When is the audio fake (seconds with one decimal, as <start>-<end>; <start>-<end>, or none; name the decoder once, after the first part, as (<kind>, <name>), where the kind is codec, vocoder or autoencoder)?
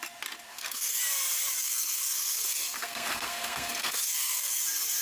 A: 0.5-1.0 (codec, SNAC); 1.6-4.6